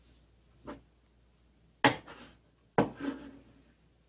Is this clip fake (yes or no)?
no